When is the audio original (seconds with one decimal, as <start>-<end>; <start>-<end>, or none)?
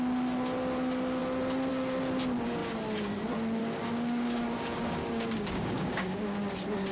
0.0-3.6; 6.5-6.9